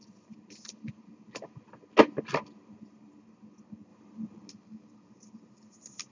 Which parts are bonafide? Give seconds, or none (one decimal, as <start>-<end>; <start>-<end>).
0.0-6.1